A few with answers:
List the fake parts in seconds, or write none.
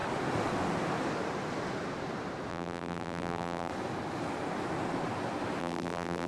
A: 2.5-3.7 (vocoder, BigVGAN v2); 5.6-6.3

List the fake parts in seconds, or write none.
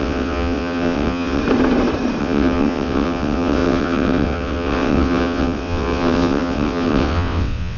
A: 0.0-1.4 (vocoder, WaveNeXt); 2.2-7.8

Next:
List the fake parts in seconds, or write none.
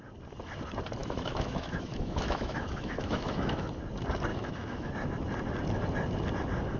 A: 1.0-3.7 (autoencoder, DAC-VAE); 4.3-4.9